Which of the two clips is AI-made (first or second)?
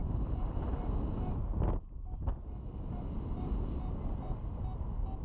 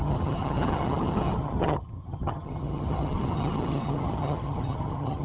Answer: second